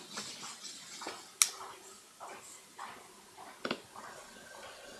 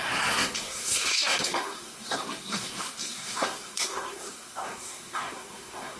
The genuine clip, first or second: first